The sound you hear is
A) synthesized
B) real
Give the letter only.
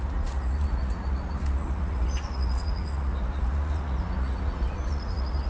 A